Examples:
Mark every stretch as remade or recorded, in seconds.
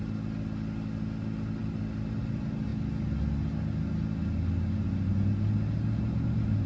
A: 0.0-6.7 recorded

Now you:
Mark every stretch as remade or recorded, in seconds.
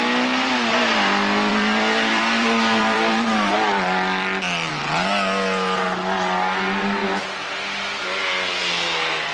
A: 0.0-1.5 recorded; 1.5-4.7 remade; 4.7-9.3 recorded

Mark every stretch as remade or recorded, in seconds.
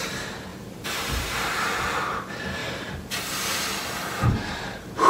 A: 0.0-0.5 recorded; 0.5-1.7 remade; 1.7-2.6 recorded; 2.6-4.3 remade; 4.3-5.1 recorded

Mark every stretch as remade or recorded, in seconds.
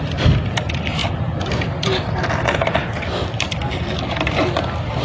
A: 0.0-5.0 recorded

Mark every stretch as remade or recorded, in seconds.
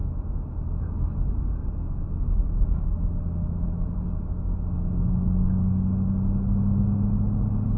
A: 0.0-7.8 recorded